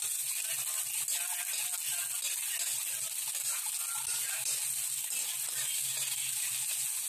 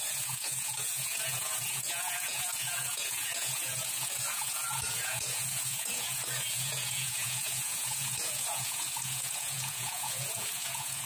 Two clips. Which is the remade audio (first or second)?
second